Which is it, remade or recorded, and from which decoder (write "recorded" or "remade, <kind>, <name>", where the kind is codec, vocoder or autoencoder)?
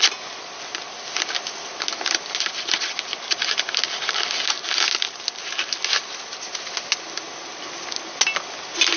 recorded